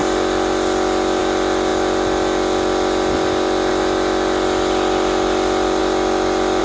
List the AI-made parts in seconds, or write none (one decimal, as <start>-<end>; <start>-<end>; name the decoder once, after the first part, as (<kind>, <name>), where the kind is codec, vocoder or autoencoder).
none